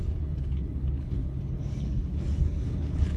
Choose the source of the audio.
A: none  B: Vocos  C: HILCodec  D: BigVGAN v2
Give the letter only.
C